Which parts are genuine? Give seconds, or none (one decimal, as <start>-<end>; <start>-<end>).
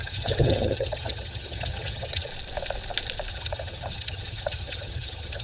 2.3-3.3